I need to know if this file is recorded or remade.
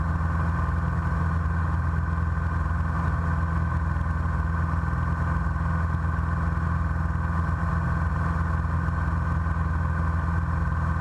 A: recorded